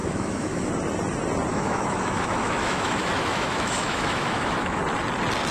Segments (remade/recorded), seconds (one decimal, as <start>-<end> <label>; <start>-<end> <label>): 0.0-0.7 remade; 0.7-1.5 recorded; 1.5-4.8 remade; 4.8-5.5 recorded